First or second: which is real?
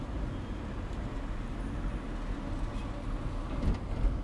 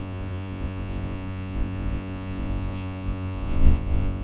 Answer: first